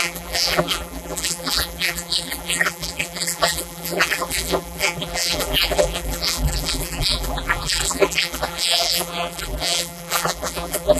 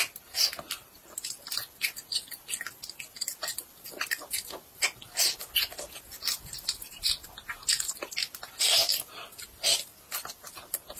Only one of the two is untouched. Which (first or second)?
second